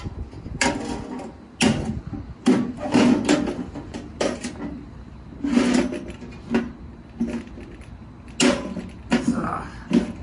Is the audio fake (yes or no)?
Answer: no